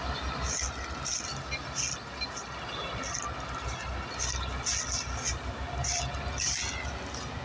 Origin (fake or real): real